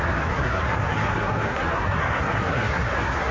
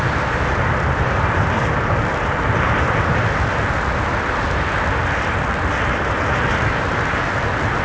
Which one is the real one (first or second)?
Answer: second